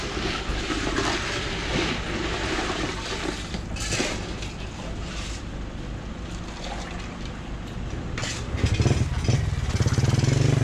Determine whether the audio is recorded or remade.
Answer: recorded